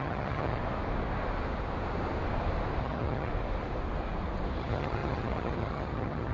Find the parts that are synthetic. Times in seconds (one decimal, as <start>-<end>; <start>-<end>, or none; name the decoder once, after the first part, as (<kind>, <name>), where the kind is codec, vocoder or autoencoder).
0.0-0.6 (vocoder, HiFi-GAN); 2.8-3.3; 4.6-6.3